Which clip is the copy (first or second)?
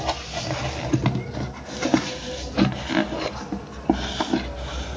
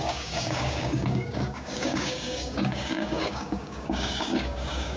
second